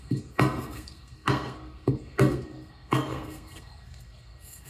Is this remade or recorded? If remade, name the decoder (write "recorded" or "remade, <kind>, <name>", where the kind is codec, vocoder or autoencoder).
remade, codec, SNAC